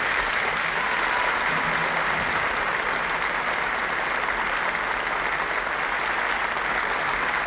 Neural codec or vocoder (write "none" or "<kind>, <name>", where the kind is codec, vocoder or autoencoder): none